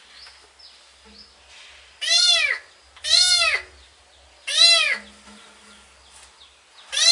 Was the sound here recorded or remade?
recorded